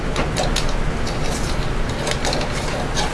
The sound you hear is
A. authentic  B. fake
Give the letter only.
A